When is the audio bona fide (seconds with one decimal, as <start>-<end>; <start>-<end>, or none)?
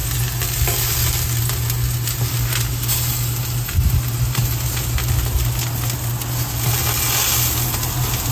0.0-8.3